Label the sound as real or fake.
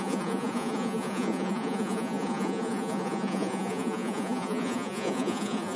fake